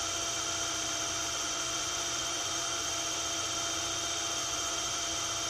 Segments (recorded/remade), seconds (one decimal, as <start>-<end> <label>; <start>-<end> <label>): 0.0-1.2 recorded; 1.2-2.9 remade; 2.9-4.4 recorded; 4.4-5.0 remade; 5.0-5.5 recorded